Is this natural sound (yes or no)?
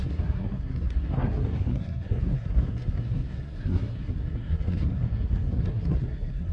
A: no